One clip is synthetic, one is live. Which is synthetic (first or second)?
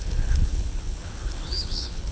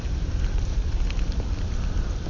first